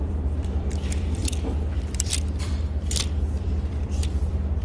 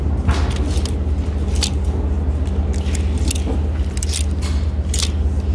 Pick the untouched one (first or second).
second